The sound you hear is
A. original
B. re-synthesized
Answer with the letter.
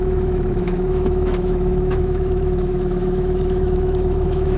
B